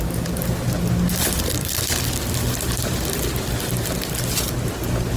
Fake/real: real